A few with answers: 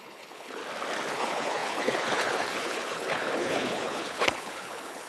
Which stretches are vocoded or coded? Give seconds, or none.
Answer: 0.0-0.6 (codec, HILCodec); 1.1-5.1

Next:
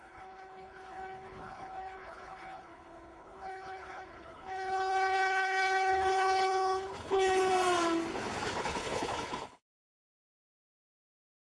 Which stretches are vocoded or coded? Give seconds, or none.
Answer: 0.0-7.5 (codec, HILCodec); 8.6-11.6

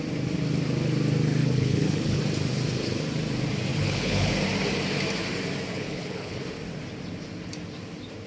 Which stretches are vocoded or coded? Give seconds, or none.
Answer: 1.4-2.2 (codec, HILCodec); 3.7-4.3; 5.7-6.4

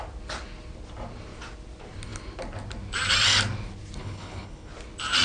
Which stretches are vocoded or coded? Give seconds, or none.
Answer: 4.0-4.7 (codec, HILCodec)

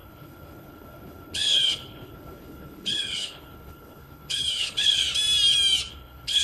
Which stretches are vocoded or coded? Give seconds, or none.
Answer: 0.0-5.0 (codec, HILCodec); 5.9-6.4

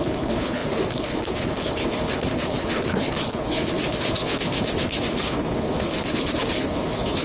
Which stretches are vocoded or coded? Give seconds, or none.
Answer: 0.0-7.2 (codec, HILCodec)

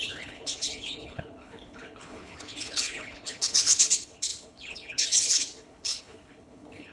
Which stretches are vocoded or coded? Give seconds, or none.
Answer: 0.0-6.9 (codec, HILCodec)

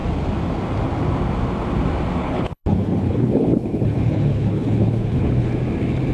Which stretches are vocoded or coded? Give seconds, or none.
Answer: 2.2-5.5 (codec, HILCodec)